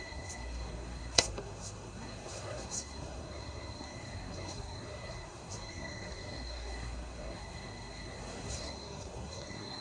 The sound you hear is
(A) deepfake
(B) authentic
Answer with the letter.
A